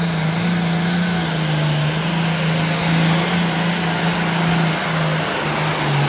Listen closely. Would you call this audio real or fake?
real